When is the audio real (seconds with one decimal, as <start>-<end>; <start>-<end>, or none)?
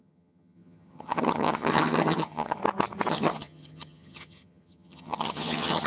2.6-3.1